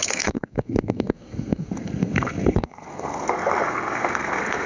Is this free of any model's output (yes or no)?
no